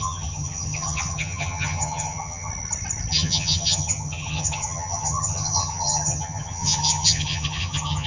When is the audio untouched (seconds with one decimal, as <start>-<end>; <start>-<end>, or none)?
2.5-3.1